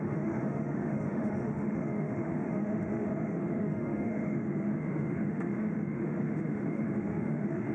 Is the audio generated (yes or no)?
yes